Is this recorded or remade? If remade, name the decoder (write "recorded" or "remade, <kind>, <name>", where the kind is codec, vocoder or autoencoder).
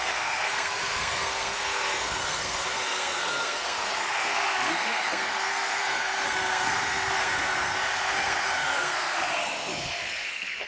remade, codec, SNAC